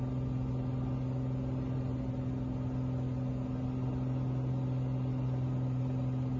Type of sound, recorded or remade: recorded